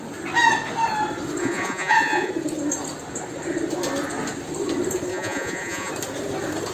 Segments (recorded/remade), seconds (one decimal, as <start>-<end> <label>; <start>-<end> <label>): 0.0-1.4 recorded; 1.4-2.3 remade; 2.3-5.1 recorded; 5.1-5.9 remade; 5.9-6.7 recorded